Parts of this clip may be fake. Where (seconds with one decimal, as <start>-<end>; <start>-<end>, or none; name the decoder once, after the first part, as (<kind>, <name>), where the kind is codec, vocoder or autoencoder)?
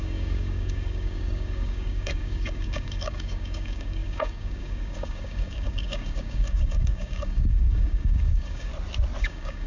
0.0-8.7 (codec, DAC); 9.2-9.7